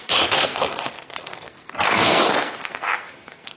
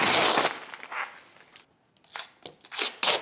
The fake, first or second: first